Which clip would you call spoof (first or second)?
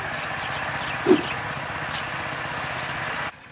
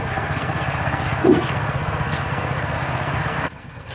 second